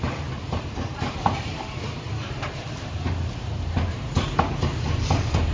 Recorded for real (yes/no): no